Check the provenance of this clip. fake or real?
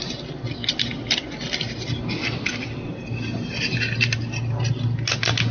real